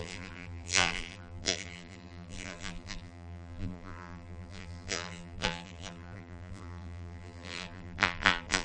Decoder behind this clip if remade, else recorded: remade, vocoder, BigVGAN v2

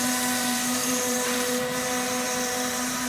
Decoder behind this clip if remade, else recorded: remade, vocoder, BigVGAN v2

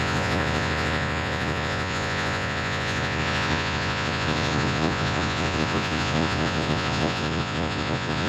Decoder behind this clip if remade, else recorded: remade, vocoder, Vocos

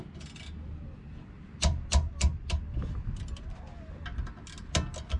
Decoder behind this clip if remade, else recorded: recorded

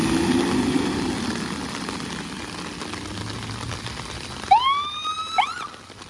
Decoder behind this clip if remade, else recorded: recorded